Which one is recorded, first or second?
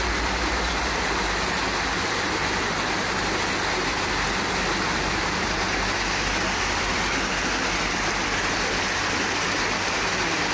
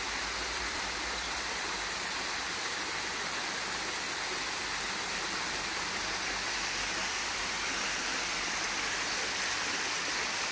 first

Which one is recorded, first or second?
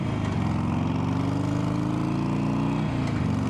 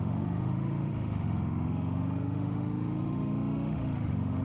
first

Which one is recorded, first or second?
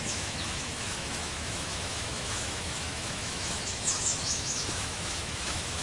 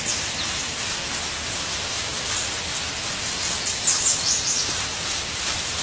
second